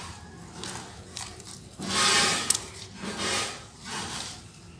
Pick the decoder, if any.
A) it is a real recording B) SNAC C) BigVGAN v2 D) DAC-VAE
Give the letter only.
A